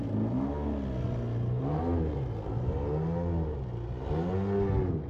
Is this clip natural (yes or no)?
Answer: yes